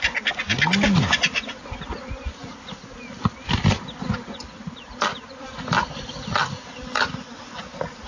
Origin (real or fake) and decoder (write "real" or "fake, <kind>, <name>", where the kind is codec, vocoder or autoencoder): real